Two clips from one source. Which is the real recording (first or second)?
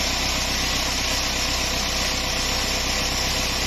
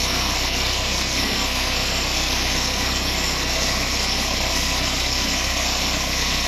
first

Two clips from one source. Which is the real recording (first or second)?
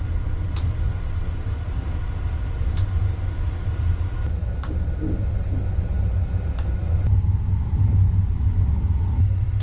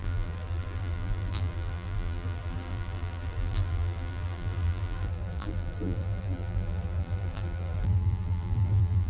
first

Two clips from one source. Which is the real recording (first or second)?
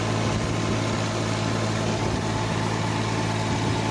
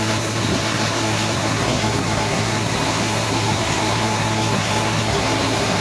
first